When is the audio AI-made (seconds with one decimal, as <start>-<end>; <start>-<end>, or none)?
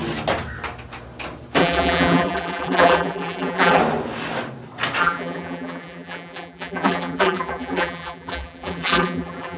1.6-3.8; 5.0-9.6